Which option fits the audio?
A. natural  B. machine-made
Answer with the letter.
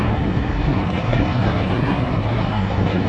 B